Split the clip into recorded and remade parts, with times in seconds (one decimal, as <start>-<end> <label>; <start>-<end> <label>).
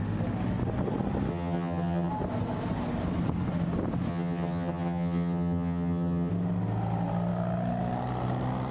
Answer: 0.0-1.3 recorded; 1.3-2.1 remade; 2.1-4.1 recorded; 4.1-6.3 remade; 6.3-8.7 recorded